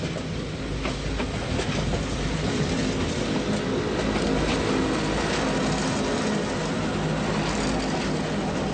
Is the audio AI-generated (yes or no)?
no